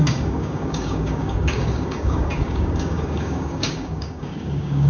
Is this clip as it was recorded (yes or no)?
no